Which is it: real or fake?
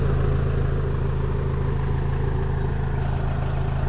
real